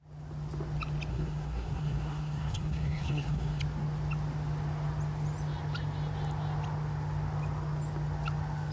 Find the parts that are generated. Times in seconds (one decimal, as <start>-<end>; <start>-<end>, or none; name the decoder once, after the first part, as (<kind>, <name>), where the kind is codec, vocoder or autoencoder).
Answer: 1.1-3.6 (codec, SNAC)